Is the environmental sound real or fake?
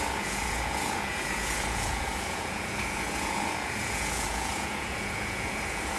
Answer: fake